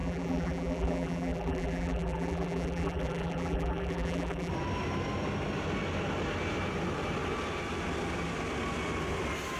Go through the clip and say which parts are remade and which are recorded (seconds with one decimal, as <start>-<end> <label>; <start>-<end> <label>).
0.0-4.5 remade; 4.5-9.6 recorded